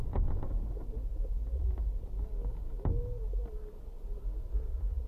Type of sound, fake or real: real